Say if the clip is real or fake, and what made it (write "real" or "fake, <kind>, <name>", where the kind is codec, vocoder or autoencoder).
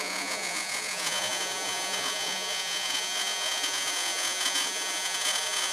fake, vocoder, Vocos